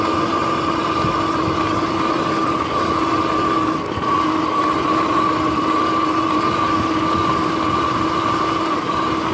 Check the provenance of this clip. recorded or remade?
recorded